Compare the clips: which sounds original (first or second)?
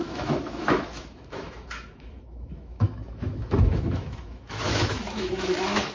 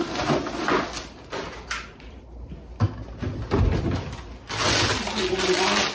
second